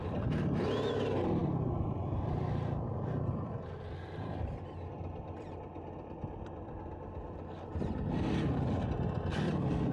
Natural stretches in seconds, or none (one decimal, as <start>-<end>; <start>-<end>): 0.0-9.9